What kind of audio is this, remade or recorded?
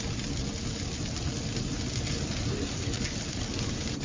recorded